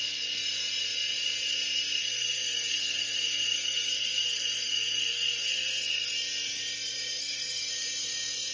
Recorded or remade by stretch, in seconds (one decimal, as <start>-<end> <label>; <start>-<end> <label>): 0.0-2.0 recorded; 2.0-6.1 remade; 6.1-7.2 recorded; 7.2-7.7 remade; 7.7-8.5 recorded